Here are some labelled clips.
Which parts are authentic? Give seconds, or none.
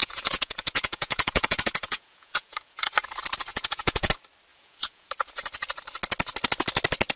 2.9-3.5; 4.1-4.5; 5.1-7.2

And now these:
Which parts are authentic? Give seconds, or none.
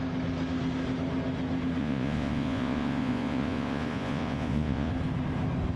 0.0-1.8; 4.9-5.8